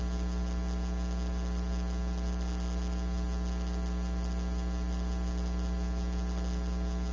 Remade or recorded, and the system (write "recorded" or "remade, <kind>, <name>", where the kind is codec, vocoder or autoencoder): recorded